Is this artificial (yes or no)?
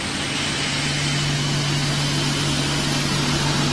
no